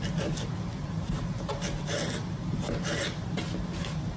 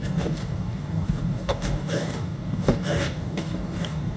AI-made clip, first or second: second